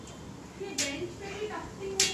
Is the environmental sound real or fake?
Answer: real